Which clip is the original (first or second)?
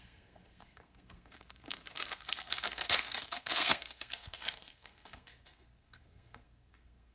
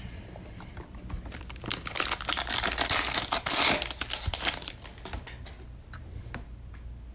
second